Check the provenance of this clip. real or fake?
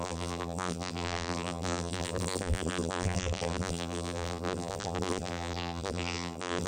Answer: fake